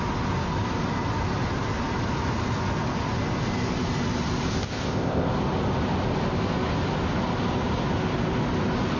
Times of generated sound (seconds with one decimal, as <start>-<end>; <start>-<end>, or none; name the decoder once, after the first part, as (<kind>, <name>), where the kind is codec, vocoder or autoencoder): 4.5-5.3 (codec, ZipCodec)